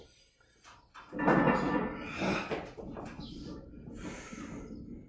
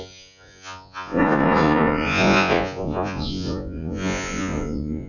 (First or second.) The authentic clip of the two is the first